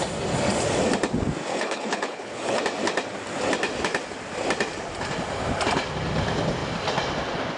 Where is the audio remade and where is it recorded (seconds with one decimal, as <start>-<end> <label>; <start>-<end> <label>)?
0.0-1.5 recorded; 1.5-2.6 remade; 2.6-7.6 recorded